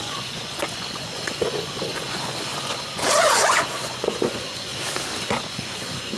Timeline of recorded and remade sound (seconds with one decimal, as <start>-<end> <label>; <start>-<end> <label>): 0.0-4.7 remade; 4.7-5.2 recorded; 5.2-6.2 remade